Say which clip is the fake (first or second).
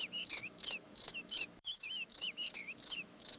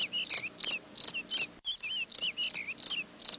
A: first